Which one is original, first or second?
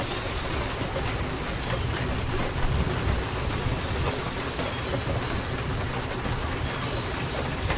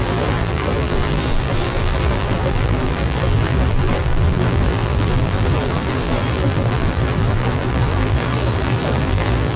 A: first